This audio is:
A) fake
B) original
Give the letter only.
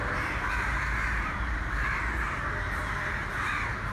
A